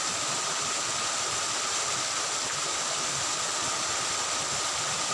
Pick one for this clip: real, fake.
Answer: real